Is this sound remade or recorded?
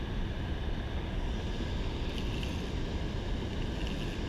recorded